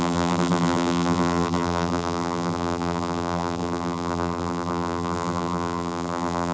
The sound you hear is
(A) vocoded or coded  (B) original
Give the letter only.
A